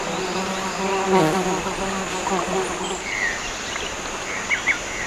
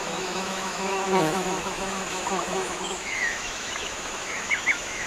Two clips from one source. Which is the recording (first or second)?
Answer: first